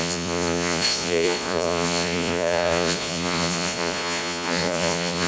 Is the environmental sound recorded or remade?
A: remade